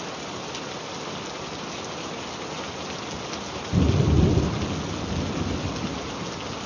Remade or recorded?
recorded